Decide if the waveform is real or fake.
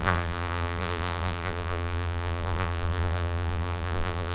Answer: fake